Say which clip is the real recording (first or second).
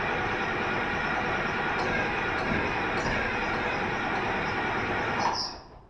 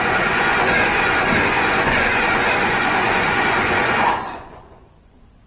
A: first